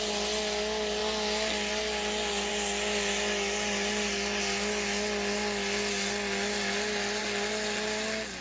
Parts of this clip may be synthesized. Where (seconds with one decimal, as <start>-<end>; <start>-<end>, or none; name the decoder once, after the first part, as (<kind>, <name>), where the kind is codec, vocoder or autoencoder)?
none